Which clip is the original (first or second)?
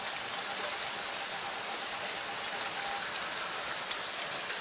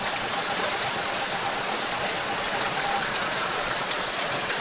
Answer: first